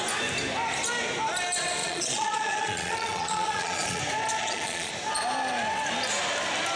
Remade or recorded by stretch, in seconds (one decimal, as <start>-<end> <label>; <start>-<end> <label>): 0.0-1.8 recorded; 1.8-4.0 remade; 4.0-4.4 recorded; 4.4-4.9 remade; 4.9-6.8 recorded